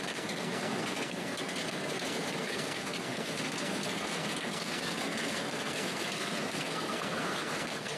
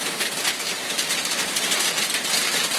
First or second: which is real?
second